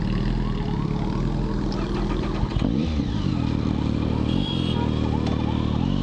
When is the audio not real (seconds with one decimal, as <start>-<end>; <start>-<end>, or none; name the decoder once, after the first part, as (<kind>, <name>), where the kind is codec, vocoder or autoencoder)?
2.5-3.3 (vocoder, BigVGAN v2)